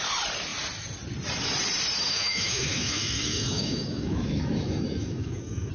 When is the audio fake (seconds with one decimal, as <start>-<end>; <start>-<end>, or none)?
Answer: 2.1-5.7